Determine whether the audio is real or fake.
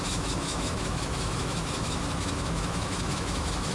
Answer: fake